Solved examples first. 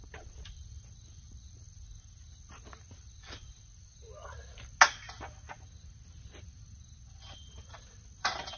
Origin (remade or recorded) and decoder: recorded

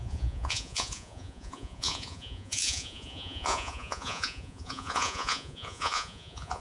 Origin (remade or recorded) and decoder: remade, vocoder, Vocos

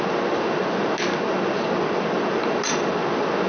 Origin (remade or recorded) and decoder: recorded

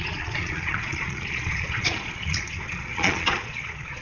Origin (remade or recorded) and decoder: remade, vocoder, Vocos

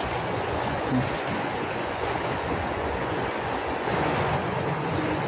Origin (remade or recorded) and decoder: remade, vocoder, Vocos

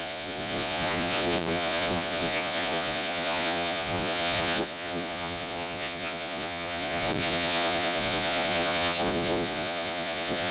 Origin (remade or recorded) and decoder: remade, vocoder, Vocos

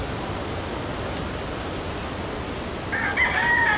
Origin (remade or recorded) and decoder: recorded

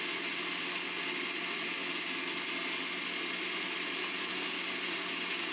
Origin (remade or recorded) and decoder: recorded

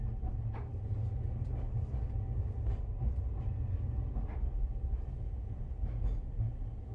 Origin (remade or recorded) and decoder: recorded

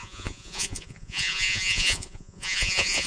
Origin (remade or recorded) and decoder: remade, vocoder, Vocos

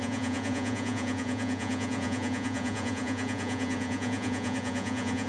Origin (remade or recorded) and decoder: remade, vocoder, Vocos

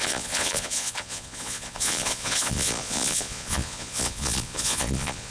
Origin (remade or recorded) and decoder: remade, vocoder, Vocos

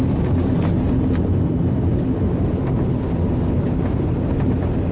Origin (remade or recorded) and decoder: recorded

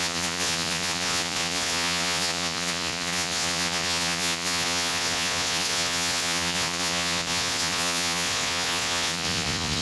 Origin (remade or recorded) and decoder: remade, vocoder, Vocos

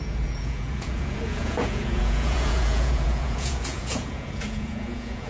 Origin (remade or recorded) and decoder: remade, vocoder, Vocos